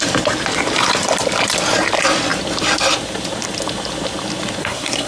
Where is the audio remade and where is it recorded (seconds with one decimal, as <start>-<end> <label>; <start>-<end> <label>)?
0.0-4.6 recorded; 4.6-5.1 remade

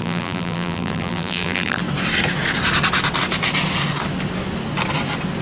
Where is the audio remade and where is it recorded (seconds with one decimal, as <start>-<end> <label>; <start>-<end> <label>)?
0.0-1.8 remade; 1.8-5.4 recorded